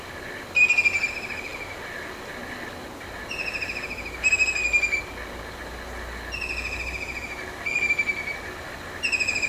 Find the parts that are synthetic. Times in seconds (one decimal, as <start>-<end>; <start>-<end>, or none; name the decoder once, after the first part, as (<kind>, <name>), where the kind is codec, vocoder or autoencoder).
none